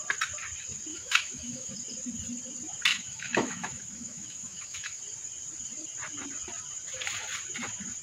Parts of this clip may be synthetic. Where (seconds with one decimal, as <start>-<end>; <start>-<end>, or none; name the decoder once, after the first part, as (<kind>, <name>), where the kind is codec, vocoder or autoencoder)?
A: 0.9-1.7 (autoencoder, DAC-VAE); 2.9-5.0